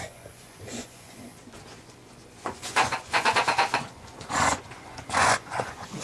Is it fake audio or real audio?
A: fake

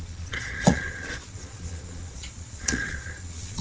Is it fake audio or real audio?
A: fake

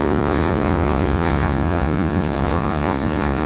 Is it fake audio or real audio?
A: fake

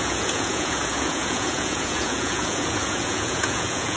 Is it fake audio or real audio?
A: fake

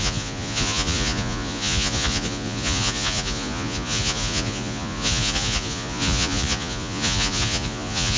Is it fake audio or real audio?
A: fake